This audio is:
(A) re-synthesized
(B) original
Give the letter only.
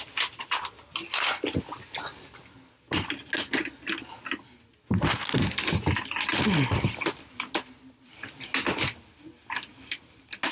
B